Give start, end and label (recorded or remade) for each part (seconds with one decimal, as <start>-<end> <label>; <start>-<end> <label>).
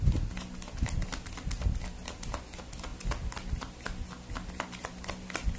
0.0-5.6 recorded